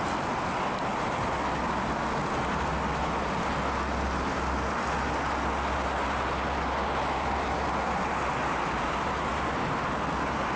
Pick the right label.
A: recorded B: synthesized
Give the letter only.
A